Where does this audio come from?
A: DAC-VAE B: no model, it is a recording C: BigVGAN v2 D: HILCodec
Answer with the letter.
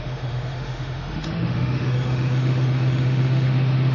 A